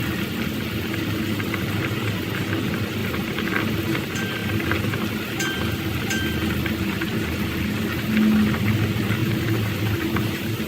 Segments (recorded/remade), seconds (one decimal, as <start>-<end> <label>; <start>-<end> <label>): 0.0-9.2 recorded; 9.2-10.7 remade